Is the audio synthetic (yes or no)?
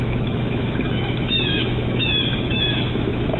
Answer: yes